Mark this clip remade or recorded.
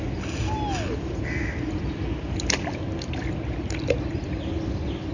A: recorded